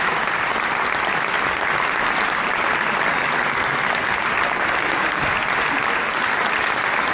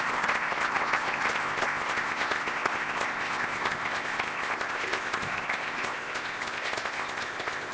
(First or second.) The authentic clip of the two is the first